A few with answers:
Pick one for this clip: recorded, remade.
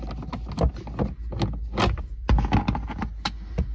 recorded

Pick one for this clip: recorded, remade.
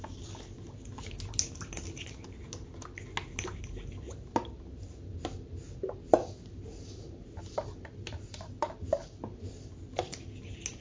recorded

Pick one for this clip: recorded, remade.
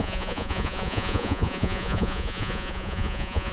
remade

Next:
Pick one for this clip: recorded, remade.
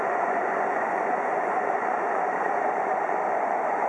remade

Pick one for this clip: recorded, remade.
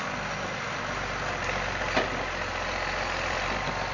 recorded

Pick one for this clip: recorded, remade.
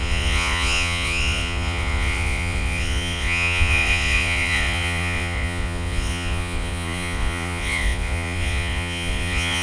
remade